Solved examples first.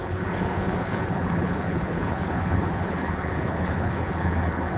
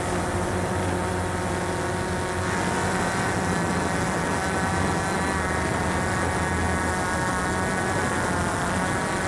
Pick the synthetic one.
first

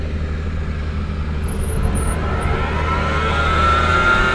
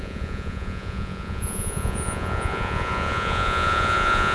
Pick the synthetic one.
second